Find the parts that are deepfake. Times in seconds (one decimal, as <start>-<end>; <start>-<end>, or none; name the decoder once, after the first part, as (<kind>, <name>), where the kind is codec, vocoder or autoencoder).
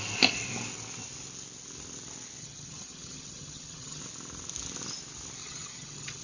2.4-4.0 (vocoder, HiFi-GAN); 5.4-6.2